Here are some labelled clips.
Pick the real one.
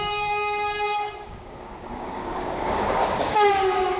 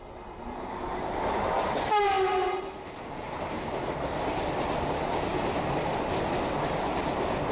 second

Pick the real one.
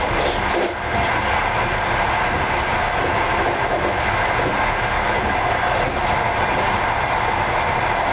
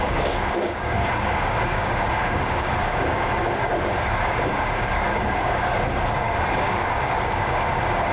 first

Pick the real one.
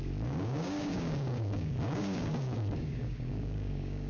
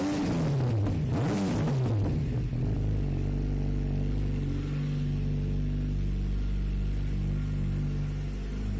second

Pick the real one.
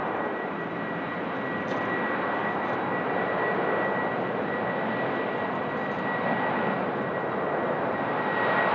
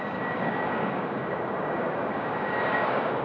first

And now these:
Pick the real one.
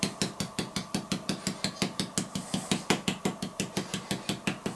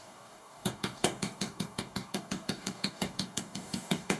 first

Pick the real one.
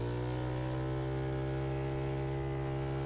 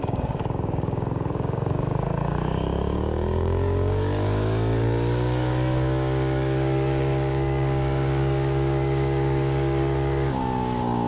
first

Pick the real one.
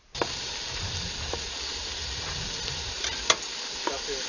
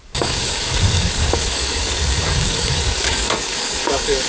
first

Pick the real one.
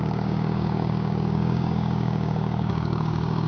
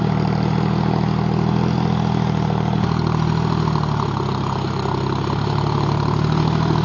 second